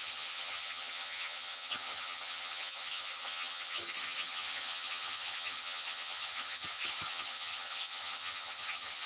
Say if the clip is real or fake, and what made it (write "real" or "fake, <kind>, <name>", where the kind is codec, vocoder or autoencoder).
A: fake, vocoder, HiFi-GAN